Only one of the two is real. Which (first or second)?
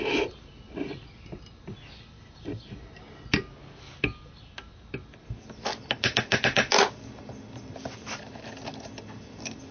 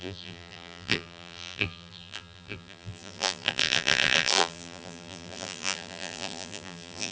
first